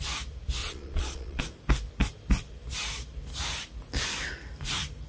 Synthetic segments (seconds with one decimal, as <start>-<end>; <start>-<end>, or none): 0.6-1.4